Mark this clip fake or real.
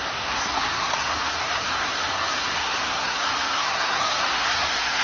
fake